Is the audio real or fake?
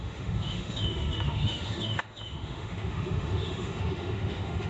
fake